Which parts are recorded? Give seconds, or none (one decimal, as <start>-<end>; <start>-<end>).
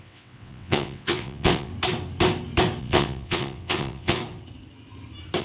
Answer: 1.7-2.8; 4.2-5.4